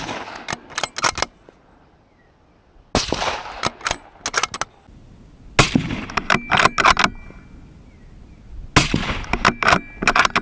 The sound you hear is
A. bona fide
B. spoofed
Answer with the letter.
A